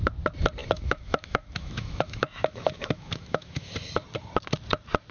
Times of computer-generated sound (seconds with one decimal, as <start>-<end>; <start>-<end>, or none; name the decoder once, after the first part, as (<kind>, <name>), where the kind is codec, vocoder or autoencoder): 0.6-3.7 (autoencoder, DAC-VAE)